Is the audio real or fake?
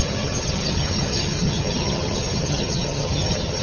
fake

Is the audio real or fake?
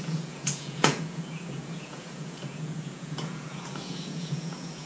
fake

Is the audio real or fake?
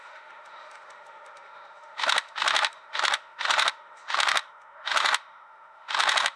fake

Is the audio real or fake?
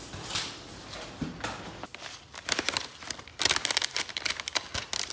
real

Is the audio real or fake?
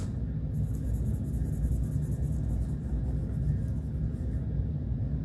real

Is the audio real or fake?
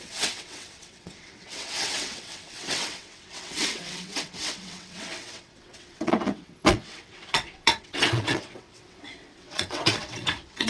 fake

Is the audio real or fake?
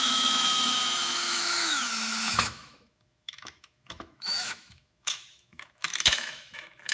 fake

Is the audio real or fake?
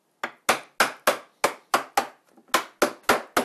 real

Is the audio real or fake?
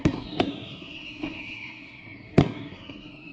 fake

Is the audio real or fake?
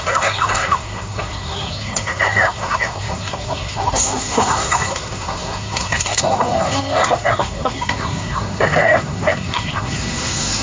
fake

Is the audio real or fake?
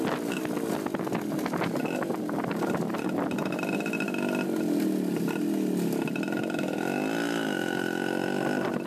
real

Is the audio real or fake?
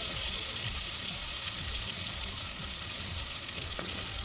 fake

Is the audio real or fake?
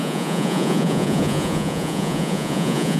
fake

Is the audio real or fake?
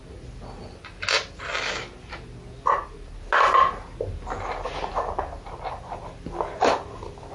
real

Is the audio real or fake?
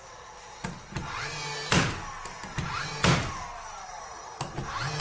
real